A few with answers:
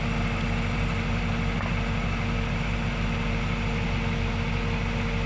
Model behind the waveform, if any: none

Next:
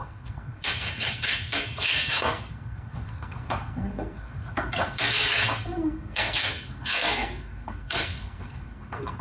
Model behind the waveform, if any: codec, SNAC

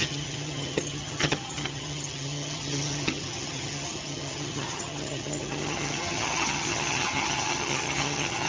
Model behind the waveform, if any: vocoder, HiFi-GAN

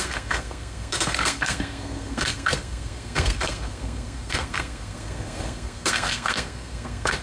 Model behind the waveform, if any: codec, SNAC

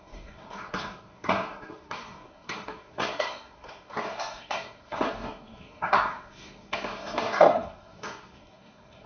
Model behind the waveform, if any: codec, SNAC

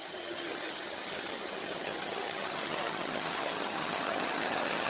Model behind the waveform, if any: vocoder, HiFi-GAN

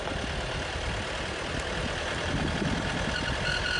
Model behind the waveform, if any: none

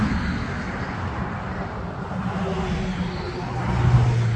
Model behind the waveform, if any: none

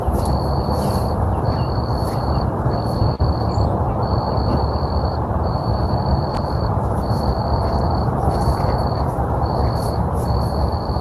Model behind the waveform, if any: vocoder, BigVGAN v2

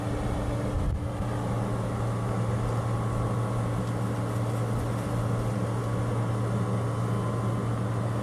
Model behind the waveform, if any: none